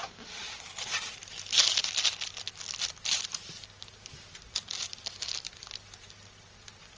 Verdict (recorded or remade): recorded